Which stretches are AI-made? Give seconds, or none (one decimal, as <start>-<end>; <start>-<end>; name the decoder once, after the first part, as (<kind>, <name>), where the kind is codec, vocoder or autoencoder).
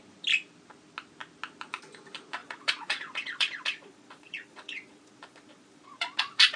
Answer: 2.4-6.6 (vocoder, Vocos)